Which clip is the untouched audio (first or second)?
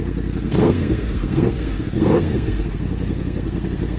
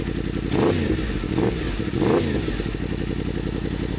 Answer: second